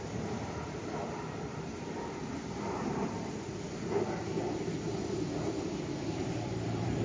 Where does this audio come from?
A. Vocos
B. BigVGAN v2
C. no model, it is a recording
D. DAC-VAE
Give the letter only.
B